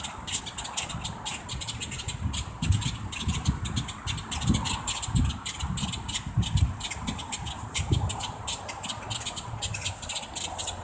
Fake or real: real